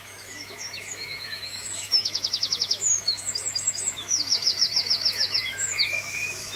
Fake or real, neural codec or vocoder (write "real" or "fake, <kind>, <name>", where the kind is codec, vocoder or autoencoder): fake, autoencoder, DAC-VAE